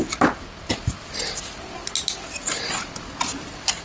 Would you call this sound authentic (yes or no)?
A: yes